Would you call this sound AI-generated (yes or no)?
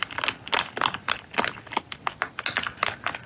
no